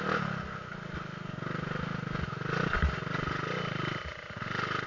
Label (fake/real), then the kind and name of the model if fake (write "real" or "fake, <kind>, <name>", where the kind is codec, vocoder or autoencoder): real